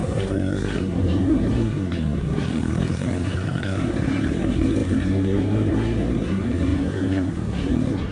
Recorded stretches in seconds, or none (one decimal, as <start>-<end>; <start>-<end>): none